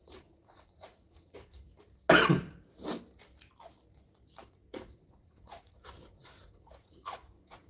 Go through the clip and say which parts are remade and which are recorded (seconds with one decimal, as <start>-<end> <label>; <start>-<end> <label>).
0.0-1.7 remade; 1.7-4.5 recorded; 4.5-7.7 remade